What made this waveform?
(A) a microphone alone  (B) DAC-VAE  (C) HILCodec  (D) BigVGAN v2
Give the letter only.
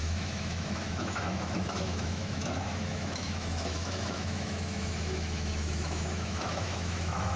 B